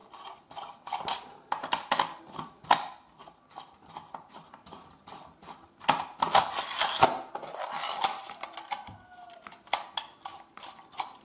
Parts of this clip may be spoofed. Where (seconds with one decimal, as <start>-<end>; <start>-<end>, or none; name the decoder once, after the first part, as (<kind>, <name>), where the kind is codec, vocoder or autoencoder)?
none